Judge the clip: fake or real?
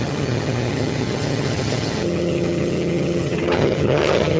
fake